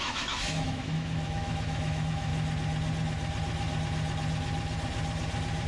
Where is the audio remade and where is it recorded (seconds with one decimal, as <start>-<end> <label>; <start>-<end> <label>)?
0.0-2.3 remade; 2.3-5.7 recorded